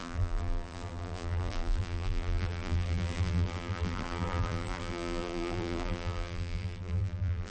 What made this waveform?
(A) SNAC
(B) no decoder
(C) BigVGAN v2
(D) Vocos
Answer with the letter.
C